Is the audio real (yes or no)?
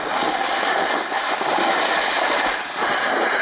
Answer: yes